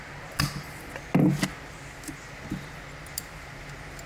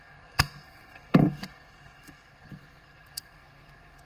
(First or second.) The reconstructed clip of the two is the second